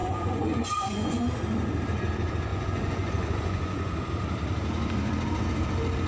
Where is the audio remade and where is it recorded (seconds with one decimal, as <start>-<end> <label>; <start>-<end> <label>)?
0.0-1.2 remade; 1.2-2.5 recorded; 2.5-4.1 remade; 4.1-6.1 recorded